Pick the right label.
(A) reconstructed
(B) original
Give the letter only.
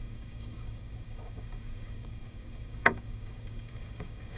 A